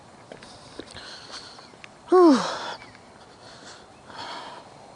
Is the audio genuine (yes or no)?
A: yes